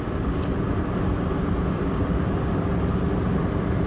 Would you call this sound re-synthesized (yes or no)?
no